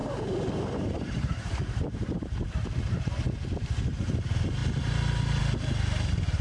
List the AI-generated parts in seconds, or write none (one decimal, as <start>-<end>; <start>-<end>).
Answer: 0.0-3.1